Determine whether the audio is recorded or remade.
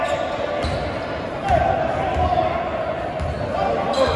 recorded